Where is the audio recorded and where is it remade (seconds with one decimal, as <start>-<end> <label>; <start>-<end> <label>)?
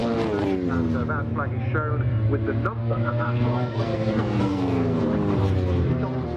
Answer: 0.0-2.8 recorded; 2.8-5.0 remade; 5.0-6.4 recorded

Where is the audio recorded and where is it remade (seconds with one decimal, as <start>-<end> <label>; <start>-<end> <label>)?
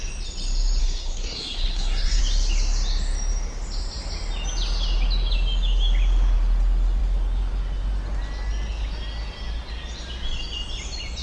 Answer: 0.0-0.8 recorded; 0.8-2.2 remade; 2.2-11.2 recorded